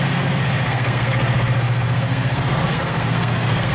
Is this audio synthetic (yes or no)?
yes